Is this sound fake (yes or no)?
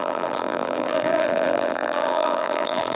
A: yes